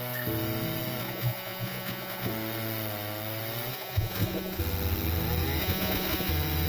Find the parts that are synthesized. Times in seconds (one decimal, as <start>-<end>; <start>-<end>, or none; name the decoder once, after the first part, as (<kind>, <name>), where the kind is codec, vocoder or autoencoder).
1.0-2.3 (vocoder, Vocos); 3.7-4.6; 5.6-6.3